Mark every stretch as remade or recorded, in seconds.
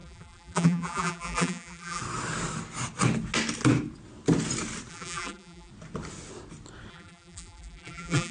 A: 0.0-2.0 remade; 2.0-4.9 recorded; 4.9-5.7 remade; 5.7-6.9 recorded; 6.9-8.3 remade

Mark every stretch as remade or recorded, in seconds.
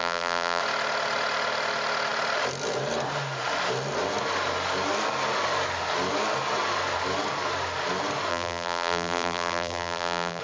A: 0.0-0.6 remade; 0.6-8.3 recorded; 8.3-10.4 remade